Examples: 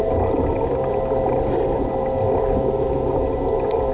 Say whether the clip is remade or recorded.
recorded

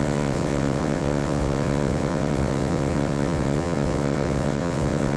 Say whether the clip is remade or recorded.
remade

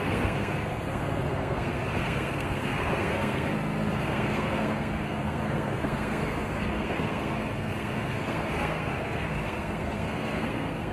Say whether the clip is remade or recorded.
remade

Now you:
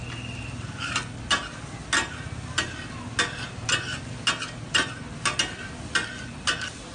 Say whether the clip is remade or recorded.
recorded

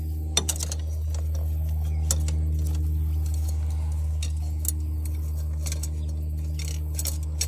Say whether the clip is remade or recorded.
recorded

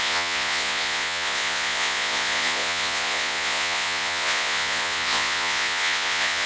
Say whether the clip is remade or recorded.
remade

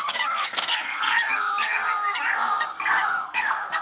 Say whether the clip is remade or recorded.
remade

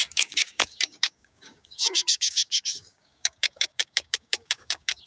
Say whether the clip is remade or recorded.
remade